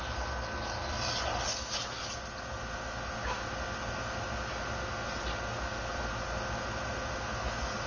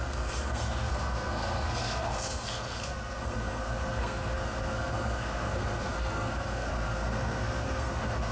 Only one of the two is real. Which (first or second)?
first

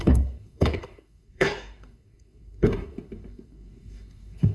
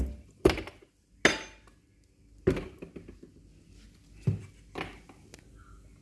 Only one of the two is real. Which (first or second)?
second